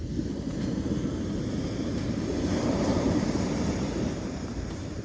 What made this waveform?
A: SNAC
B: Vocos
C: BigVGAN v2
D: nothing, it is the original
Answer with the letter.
C